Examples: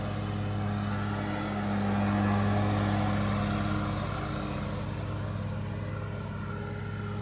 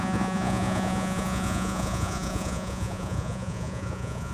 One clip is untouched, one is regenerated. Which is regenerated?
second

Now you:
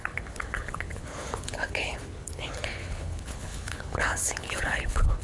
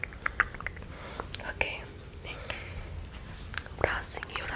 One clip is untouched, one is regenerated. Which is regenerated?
first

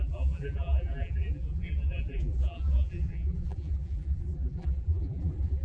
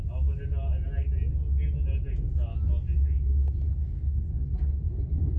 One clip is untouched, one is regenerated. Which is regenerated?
first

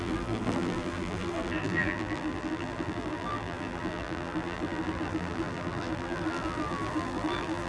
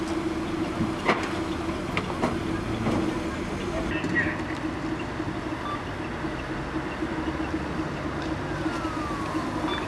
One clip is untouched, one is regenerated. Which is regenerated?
first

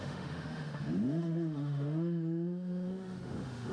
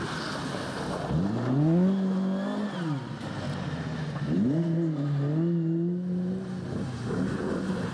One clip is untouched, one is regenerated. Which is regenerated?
first